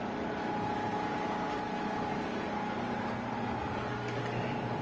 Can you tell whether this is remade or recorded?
recorded